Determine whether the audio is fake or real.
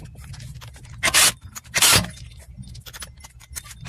real